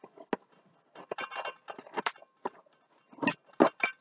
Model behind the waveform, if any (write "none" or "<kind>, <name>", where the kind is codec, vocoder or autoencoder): none